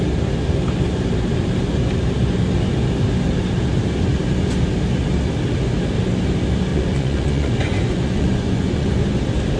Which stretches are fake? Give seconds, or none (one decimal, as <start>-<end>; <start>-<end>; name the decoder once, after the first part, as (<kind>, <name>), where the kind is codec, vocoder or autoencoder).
6.7-9.2 (vocoder, Vocos)